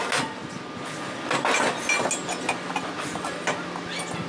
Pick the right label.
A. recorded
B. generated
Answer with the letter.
A